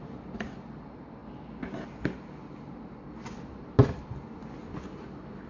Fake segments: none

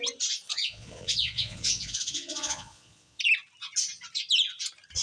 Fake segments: 0.5-3.2 (vocoder, Vocos)

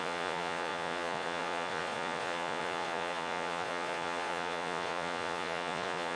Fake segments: 0.0-6.2 (vocoder, Vocos)

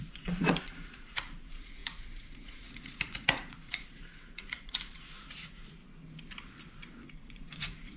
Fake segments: 0.0-5.8 (vocoder, Vocos); 7.1-8.0

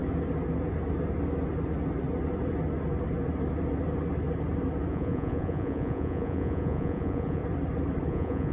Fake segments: 4.9-7.4 (vocoder, Vocos); 8.1-8.5

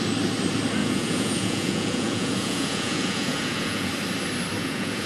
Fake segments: 0.8-3.9 (vocoder, Vocos); 4.6-5.1

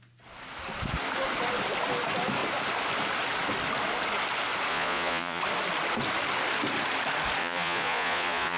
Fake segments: 4.7-5.4 (vocoder, Vocos); 7.4-8.6

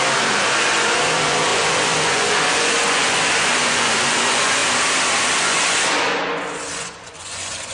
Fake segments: 0.0-4.6 (vocoder, Vocos); 5.4-7.7